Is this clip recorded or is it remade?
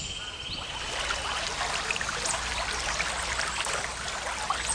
recorded